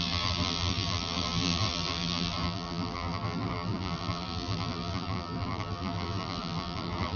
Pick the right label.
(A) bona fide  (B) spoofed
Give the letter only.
B